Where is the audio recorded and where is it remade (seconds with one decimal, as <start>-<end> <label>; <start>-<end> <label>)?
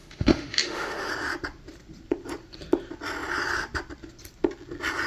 0.0-1.1 remade; 1.1-5.1 recorded